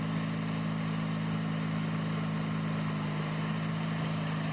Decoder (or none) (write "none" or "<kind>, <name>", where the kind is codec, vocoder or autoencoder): none